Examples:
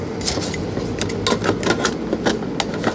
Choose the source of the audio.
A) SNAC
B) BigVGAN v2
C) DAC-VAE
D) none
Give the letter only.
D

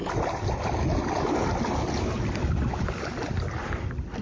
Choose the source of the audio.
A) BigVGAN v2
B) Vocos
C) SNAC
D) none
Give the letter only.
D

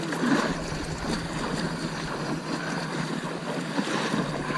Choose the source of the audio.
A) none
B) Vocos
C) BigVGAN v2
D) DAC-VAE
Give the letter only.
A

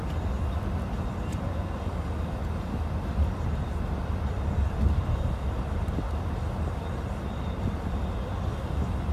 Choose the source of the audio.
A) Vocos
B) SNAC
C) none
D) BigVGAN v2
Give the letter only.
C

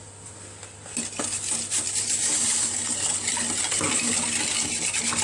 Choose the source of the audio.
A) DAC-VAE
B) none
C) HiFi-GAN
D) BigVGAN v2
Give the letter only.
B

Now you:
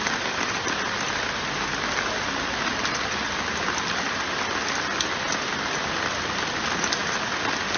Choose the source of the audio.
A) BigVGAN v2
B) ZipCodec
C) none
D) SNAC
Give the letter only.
C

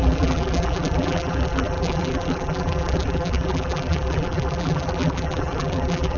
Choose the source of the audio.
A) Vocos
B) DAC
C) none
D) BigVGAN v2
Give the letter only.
D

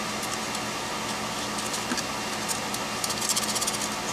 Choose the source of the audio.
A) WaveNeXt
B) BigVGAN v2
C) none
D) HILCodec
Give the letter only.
C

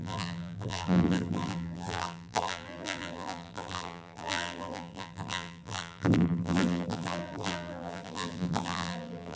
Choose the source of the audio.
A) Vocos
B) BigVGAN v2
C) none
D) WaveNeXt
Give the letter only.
B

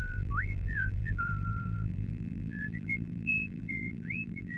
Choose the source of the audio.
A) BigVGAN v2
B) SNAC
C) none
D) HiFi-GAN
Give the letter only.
A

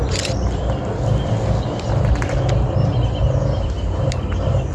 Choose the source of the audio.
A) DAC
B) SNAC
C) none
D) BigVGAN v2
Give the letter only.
C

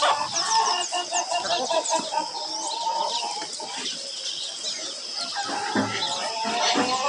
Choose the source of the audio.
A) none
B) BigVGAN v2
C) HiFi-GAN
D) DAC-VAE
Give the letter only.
B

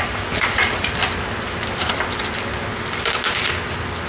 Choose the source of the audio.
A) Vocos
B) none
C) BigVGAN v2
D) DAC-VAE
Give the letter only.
B